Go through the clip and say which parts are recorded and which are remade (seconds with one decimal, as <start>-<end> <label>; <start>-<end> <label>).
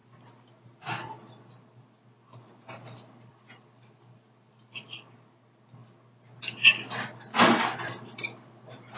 0.0-9.0 recorded